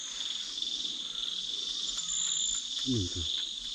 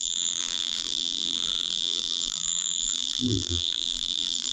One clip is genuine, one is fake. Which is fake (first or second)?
second